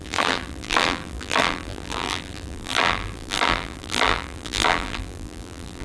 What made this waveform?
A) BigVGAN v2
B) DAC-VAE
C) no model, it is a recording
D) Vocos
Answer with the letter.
A